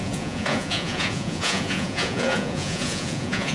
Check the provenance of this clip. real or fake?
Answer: fake